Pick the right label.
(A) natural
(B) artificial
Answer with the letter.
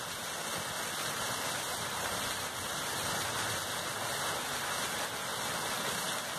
A